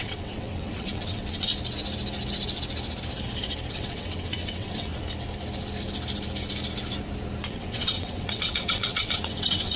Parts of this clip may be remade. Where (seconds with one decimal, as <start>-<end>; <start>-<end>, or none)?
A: 0.0-1.5; 3.7-4.9; 7.5-9.8